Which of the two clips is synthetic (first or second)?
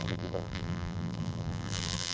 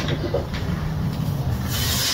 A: first